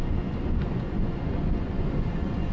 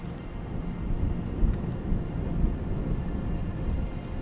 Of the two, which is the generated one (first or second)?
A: first